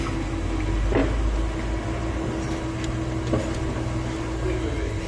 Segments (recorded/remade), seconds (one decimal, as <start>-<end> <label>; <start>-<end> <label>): 0.0-5.1 recorded